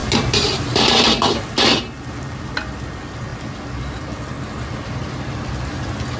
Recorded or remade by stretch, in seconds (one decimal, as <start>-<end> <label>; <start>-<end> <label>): 0.0-6.2 recorded